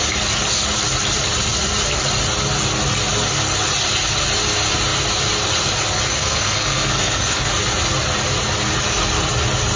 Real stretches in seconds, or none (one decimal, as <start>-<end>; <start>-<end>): 0.0-6.1; 7.5-9.8